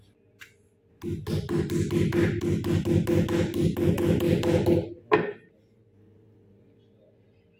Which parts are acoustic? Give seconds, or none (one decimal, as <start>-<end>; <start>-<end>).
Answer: 0.0-7.6